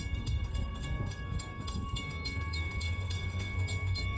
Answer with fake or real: fake